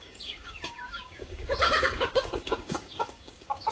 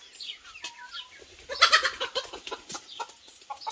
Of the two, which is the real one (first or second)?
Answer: second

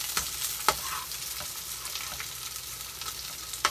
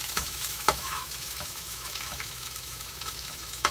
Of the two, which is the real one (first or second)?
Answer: first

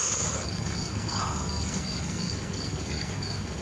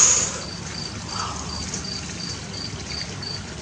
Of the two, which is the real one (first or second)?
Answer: second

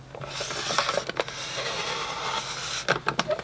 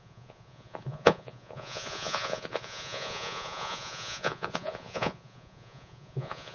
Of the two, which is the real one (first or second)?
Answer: first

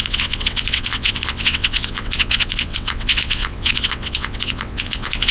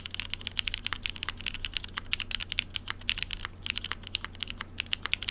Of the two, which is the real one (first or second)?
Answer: second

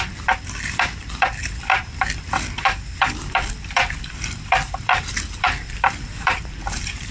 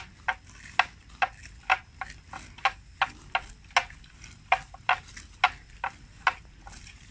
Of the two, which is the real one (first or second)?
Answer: second